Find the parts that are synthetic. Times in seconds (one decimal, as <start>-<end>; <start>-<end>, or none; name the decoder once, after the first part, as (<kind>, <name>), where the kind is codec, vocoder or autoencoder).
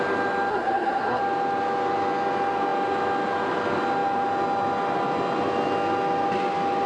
0.5-1.2 (codec, SNAC)